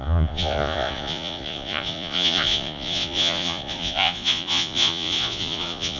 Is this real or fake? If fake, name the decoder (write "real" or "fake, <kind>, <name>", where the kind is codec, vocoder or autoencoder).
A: fake, vocoder, Vocos